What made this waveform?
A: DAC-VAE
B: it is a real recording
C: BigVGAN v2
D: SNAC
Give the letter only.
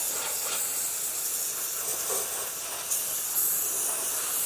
C